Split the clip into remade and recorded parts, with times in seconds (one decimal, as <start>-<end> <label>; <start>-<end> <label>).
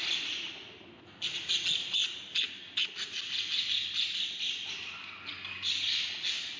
0.0-6.6 recorded